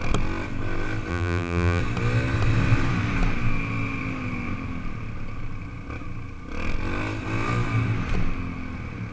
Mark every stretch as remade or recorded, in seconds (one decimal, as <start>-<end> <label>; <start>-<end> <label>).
0.0-1.1 recorded; 1.1-1.8 remade; 1.8-9.1 recorded